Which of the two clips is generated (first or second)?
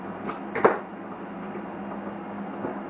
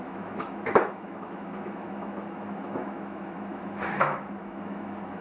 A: second